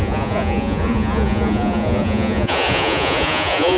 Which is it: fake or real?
fake